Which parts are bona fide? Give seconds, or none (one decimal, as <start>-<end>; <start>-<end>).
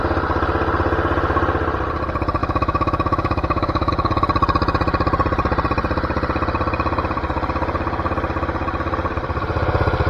0.0-2.4; 3.9-10.1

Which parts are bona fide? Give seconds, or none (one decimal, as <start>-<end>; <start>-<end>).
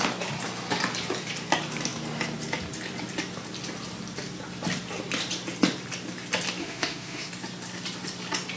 0.0-6.6; 7.3-8.6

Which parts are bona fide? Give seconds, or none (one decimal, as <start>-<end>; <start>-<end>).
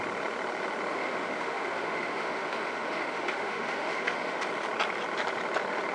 0.0-0.9; 4.4-5.9